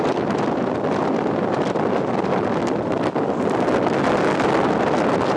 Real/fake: fake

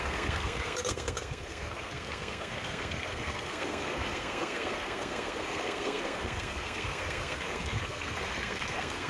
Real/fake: fake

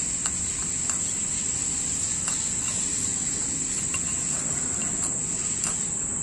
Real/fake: real